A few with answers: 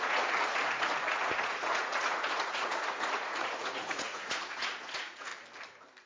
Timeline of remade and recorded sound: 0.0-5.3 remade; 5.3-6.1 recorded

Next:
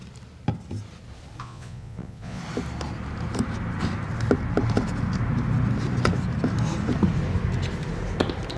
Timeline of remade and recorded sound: 0.0-1.4 recorded; 1.4-2.4 remade; 2.4-8.6 recorded

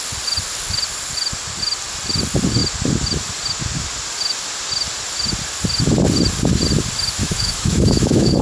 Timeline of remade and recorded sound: 0.0-7.2 recorded; 7.2-8.4 remade